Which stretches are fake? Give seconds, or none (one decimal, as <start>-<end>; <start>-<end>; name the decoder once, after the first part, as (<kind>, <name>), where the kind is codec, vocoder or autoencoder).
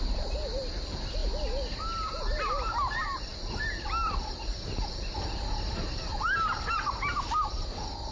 none